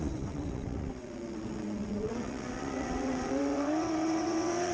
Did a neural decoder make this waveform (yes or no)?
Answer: yes